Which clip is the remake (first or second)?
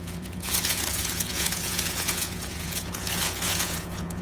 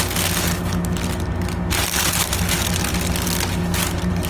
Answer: first